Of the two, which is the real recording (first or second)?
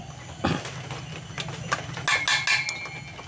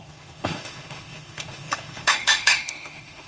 first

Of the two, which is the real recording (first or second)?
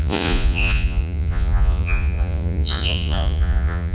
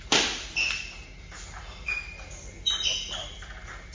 second